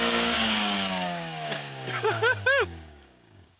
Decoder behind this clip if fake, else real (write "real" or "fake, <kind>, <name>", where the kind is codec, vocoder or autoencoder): fake, codec, DAC